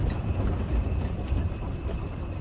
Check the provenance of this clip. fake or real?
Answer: real